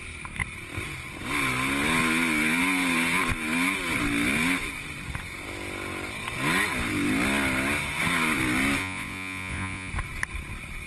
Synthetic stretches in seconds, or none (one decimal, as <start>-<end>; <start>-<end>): 8.8-9.9